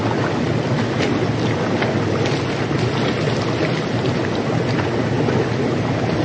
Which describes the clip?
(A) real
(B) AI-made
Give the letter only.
A